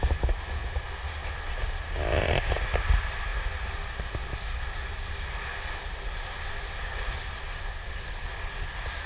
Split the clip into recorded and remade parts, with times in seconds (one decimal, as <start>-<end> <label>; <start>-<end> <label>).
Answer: 0.0-9.1 recorded